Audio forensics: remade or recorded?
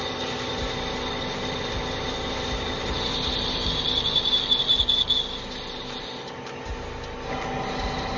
recorded